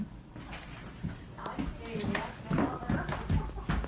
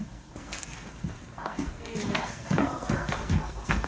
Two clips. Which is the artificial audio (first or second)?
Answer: second